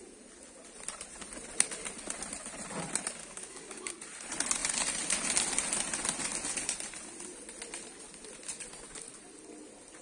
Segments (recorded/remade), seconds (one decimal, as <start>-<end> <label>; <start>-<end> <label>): 0.0-3.2 recorded; 3.2-3.9 remade; 3.9-10.0 recorded